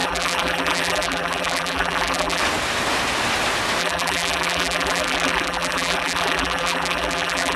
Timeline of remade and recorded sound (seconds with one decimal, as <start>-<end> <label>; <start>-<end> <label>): 0.0-2.4 remade; 2.4-3.8 recorded; 3.8-7.6 remade